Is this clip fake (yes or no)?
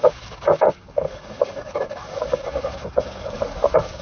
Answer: yes